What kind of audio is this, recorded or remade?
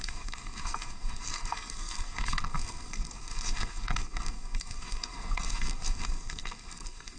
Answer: remade